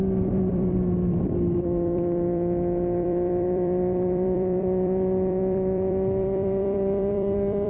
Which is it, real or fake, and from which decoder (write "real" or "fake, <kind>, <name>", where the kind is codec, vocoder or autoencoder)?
fake, vocoder, BigVGAN v2